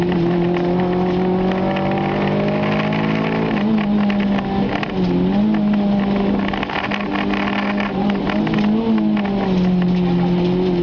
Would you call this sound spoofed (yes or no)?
no